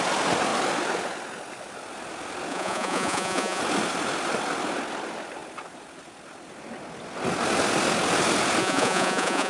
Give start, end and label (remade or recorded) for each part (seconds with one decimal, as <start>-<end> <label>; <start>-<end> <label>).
0.0-2.5 recorded; 2.5-3.6 remade; 3.6-8.6 recorded; 8.6-9.5 remade